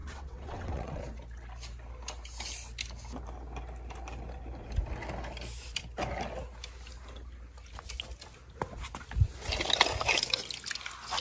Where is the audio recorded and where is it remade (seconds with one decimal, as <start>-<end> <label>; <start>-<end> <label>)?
0.0-1.0 remade; 1.0-11.2 recorded